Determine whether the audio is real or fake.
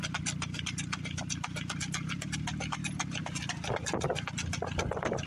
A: real